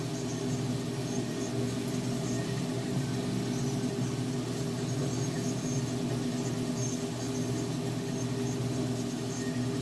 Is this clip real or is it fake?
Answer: real